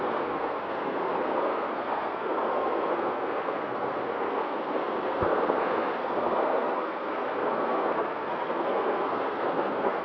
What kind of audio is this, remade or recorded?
remade